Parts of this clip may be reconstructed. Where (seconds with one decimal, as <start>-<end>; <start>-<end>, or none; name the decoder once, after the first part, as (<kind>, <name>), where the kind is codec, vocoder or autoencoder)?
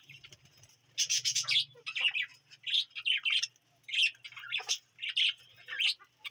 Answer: 1.1-1.6 (vocoder, Vocos)